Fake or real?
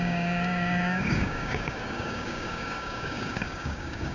fake